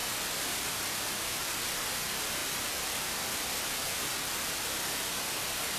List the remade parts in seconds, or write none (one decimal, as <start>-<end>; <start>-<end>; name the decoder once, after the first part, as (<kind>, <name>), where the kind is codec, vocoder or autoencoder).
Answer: none

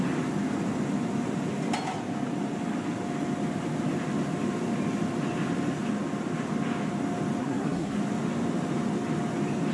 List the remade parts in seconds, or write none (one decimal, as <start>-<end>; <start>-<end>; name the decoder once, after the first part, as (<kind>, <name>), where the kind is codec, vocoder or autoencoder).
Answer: 7.4-8.0 (codec, SNAC)

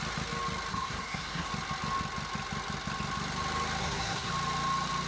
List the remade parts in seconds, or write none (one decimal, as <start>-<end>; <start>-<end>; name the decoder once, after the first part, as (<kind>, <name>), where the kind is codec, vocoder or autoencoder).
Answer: 0.7-1.5 (codec, SNAC); 3.8-4.3

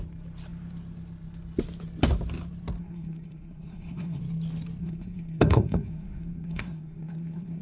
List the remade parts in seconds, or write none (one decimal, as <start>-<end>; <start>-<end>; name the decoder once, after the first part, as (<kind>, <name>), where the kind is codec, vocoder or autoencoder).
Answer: 2.8-4.2 (codec, SNAC); 4.8-7.6

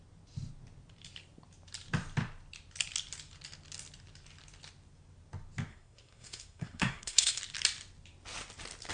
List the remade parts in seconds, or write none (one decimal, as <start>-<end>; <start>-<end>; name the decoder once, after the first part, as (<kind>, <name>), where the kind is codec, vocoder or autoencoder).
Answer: 5.7-7.4 (codec, SNAC)

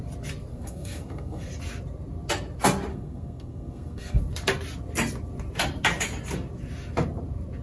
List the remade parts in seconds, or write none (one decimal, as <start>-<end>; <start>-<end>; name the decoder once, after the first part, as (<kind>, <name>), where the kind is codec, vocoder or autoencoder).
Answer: 0.5-1.5 (codec, SNAC); 2.9-4.2

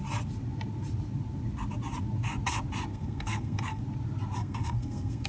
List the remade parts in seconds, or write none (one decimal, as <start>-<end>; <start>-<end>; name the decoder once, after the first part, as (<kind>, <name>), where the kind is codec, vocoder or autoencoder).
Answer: 2.9-3.8 (codec, SNAC); 4.4-5.3